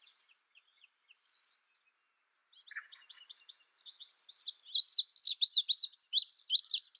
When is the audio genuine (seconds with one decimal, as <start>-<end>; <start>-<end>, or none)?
0.0-7.0